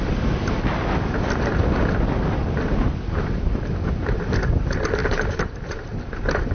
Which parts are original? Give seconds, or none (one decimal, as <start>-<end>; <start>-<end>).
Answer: 0.0-5.0; 5.6-6.5